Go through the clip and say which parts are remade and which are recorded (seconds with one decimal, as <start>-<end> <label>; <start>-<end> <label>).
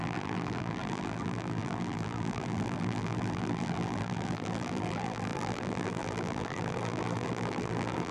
0.0-8.1 remade